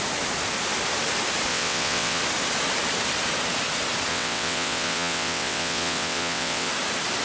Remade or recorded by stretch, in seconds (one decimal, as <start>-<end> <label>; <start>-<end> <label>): 0.0-1.5 recorded; 1.5-2.2 remade; 2.2-4.1 recorded; 4.1-6.7 remade; 6.7-7.2 recorded